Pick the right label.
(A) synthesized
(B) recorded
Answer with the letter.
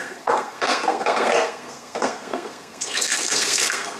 A